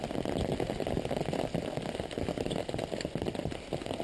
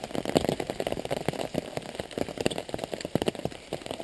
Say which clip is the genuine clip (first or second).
first